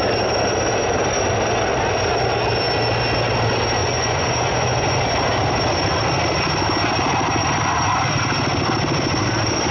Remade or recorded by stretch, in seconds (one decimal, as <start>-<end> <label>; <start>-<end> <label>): 0.0-3.8 recorded; 3.8-5.0 remade; 5.0-9.7 recorded